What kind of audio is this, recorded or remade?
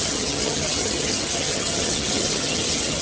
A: remade